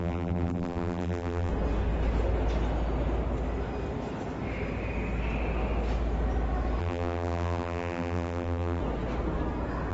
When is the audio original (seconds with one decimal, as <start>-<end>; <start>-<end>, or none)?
1.5-6.8; 8.8-9.9